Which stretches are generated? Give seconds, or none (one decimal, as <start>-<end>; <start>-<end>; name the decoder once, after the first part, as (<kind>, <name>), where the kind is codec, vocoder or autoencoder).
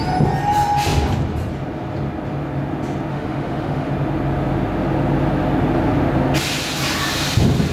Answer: 3.1-3.9 (autoencoder, DAC-VAE)